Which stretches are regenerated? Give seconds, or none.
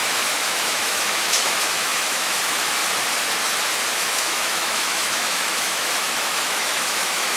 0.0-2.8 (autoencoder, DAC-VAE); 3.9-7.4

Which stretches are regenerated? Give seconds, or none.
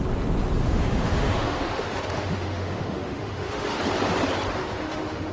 0.6-3.8 (autoencoder, DAC-VAE); 4.6-5.3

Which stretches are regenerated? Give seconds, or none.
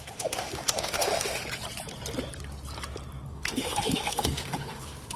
0.0-1.4 (autoencoder, DAC-VAE); 3.3-5.2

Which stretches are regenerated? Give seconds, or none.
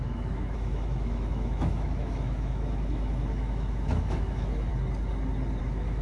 0.0-4.7 (autoencoder, DAC-VAE); 5.6-6.0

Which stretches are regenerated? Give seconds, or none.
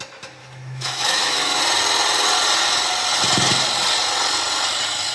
0.4-1.6 (autoencoder, DAC-VAE)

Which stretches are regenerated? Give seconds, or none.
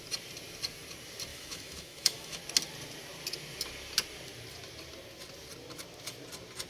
1.3-2.4 (autoencoder, DAC-VAE)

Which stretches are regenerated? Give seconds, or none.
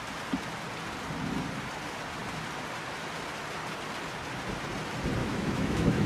5.2-6.1 (autoencoder, DAC-VAE)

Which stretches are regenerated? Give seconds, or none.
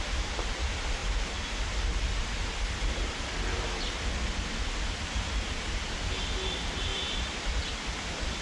none